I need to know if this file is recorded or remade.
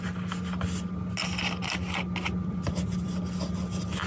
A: recorded